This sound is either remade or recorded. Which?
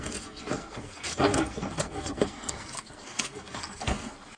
remade